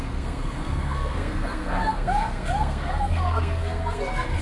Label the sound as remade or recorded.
remade